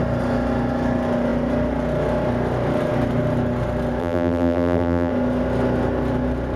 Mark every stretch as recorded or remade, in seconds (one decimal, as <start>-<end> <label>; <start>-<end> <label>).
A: 0.0-4.0 recorded; 4.0-5.1 remade; 5.1-6.6 recorded